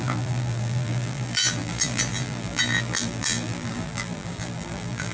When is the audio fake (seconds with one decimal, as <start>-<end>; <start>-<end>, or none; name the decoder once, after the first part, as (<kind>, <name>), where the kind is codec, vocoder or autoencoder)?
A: 0.0-5.1 (vocoder, BigVGAN v2)